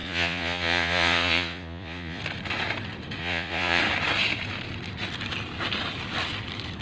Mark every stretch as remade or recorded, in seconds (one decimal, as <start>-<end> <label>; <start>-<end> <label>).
0.0-2.2 remade; 2.2-3.2 recorded; 3.2-3.8 remade; 3.8-6.8 recorded